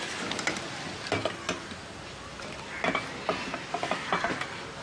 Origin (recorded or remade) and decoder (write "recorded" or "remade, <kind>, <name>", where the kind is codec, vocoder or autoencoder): recorded